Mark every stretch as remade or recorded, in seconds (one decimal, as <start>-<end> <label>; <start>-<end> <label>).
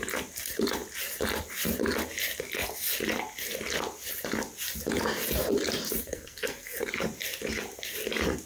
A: 0.0-6.0 recorded; 6.0-6.9 remade; 6.9-8.5 recorded